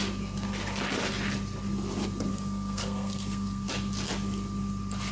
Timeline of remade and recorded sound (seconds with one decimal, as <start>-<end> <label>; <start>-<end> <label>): 0.0-2.3 recorded; 2.3-3.7 remade; 3.7-5.1 recorded